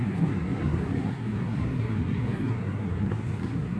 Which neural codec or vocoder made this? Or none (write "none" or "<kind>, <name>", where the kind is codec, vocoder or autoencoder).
codec, SNAC